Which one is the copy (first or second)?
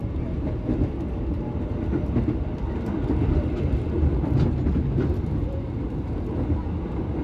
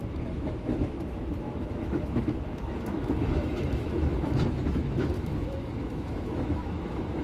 second